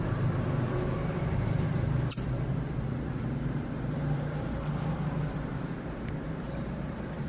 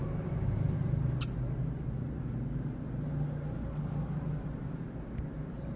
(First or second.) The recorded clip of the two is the second